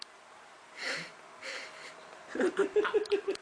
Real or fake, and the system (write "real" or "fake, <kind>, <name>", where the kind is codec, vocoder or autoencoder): fake, vocoder, BigVGAN v2